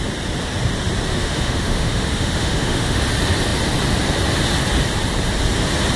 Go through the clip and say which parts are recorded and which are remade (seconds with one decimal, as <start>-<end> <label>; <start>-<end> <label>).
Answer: 0.0-1.1 recorded; 1.1-3.0 remade; 3.0-6.0 recorded